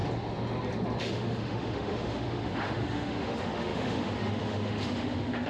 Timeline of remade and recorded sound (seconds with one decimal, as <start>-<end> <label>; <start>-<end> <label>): 0.0-1.0 recorded; 1.0-5.5 remade